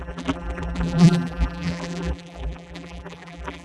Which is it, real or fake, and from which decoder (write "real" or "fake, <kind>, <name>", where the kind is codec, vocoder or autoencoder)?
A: fake, vocoder, BigVGAN v2